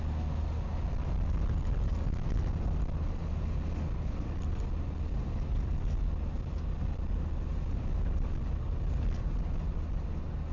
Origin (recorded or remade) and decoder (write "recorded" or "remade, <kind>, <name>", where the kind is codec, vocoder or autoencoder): recorded